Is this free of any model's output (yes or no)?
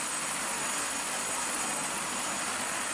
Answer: yes